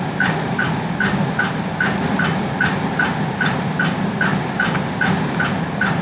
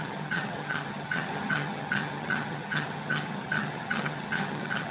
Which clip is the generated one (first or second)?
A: second